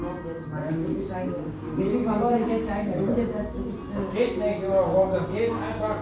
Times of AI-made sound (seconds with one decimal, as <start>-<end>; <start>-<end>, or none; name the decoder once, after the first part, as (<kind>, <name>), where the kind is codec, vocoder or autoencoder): 0.6-3.1 (codec, DAC)